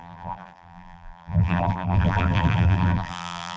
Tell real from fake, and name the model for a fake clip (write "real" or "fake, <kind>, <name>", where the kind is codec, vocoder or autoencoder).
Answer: fake, vocoder, BigVGAN v2